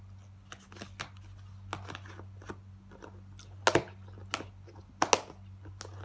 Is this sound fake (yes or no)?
no